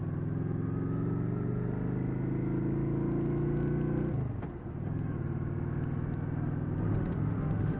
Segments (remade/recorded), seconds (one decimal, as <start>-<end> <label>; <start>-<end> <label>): 0.0-6.9 recorded; 6.9-7.8 remade